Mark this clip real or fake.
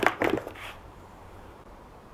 fake